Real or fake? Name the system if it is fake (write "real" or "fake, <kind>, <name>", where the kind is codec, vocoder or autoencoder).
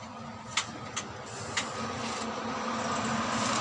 real